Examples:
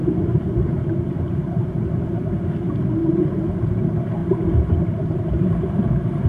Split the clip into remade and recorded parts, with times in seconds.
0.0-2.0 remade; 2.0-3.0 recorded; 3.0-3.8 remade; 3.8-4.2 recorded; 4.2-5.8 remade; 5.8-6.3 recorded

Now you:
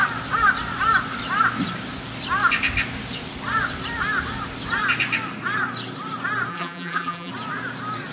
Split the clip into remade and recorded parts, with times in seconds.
0.0-6.5 recorded; 6.5-7.3 remade; 7.3-8.1 recorded

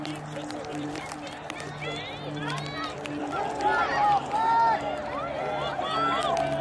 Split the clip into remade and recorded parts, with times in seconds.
0.0-0.7 recorded; 0.7-1.7 remade; 1.7-6.6 recorded

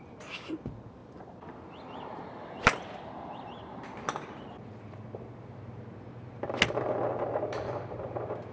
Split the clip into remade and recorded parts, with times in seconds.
0.0-1.0 recorded; 1.0-3.1 remade; 3.1-8.5 recorded